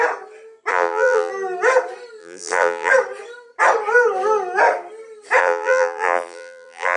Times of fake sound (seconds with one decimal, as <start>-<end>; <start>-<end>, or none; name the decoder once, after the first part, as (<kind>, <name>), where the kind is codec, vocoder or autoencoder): 0.7-1.3 (vocoder, BigVGAN v2); 2.2-2.9; 5.4-7.0